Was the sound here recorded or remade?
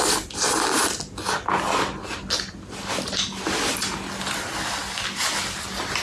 recorded